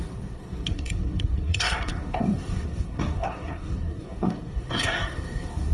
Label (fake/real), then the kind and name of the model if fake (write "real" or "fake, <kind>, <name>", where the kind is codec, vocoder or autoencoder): fake, codec, SNAC